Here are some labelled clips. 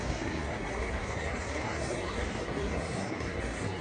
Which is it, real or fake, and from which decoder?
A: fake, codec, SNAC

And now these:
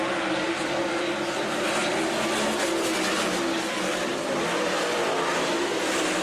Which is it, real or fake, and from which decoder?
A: real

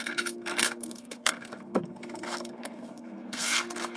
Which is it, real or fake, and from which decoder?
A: fake, codec, SNAC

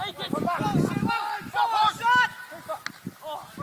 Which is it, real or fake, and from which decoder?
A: real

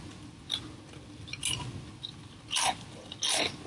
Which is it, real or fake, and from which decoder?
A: real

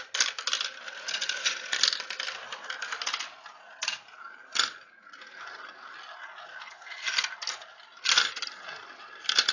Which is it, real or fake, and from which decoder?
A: real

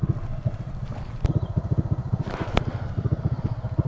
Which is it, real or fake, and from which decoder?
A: real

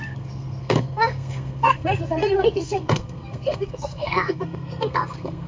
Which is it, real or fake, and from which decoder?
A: fake, codec, SNAC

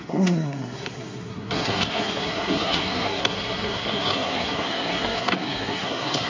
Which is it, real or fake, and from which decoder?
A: fake, codec, SNAC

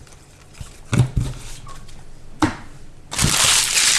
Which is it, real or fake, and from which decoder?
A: real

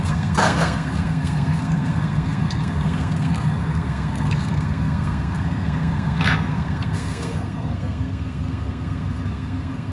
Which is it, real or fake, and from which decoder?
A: fake, codec, SNAC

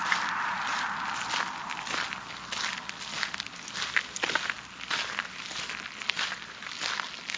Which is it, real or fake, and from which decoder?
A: real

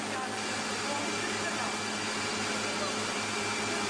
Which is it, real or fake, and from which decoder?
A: real